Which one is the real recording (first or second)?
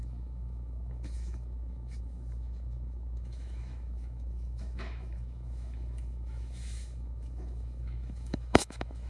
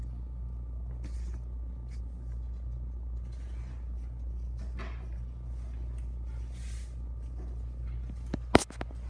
second